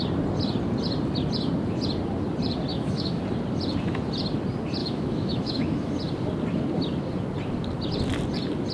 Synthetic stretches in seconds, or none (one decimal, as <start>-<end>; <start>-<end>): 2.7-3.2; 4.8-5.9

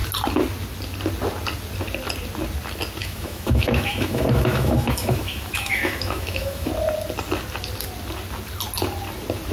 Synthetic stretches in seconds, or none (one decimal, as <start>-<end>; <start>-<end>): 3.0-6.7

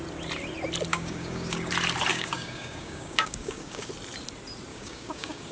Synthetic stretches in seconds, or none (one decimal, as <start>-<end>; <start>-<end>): 0.9-1.7; 2.1-3.9; 4.7-5.5

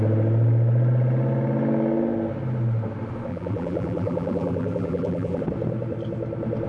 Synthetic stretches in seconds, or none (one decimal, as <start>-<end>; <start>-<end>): 3.3-5.4

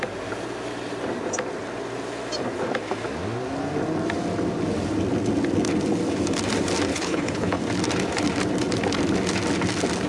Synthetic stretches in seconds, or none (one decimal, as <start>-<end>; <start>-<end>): 6.9-7.6

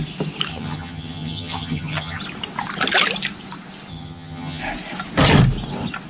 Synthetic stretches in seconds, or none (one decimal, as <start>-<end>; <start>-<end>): 0.5-2.2; 3.9-4.6

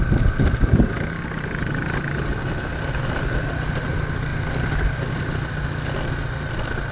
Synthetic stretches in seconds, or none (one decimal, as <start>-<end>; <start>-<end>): none